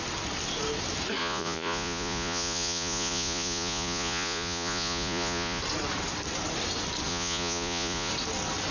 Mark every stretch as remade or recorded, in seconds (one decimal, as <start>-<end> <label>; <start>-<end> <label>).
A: 0.0-1.2 recorded; 1.2-5.6 remade; 5.6-7.1 recorded; 7.1-8.1 remade; 8.1-8.7 recorded

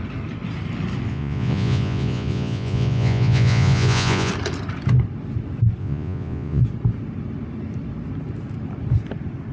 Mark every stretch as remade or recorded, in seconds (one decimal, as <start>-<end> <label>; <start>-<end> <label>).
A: 0.0-1.1 recorded; 1.1-4.3 remade; 4.3-5.8 recorded; 5.8-6.6 remade; 6.6-9.5 recorded

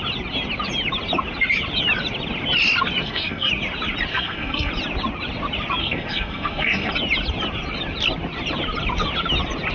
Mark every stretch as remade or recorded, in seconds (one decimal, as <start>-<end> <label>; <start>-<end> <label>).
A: 0.0-3.0 recorded; 3.0-3.5 remade; 3.5-4.1 recorded; 4.1-4.7 remade; 4.7-5.8 recorded; 5.8-6.9 remade; 6.9-9.7 recorded

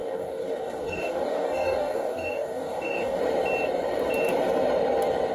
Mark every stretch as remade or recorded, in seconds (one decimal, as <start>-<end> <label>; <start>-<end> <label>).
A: 0.0-3.2 remade; 3.2-5.3 recorded

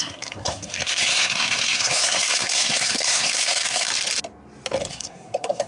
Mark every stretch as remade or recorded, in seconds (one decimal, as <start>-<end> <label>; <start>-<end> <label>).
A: 0.0-3.9 remade; 3.9-4.9 recorded; 4.9-5.7 remade